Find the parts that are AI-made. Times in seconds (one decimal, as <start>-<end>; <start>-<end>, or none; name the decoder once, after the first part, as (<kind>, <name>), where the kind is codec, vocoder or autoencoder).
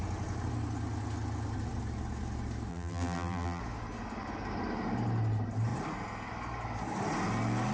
2.7-3.6 (vocoder, BigVGAN v2)